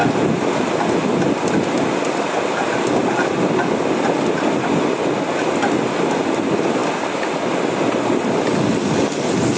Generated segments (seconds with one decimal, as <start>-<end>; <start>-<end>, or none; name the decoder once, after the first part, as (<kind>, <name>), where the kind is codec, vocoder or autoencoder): none